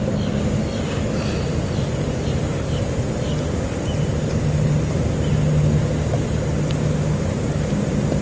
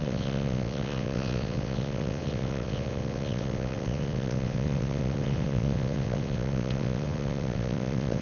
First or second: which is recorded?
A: first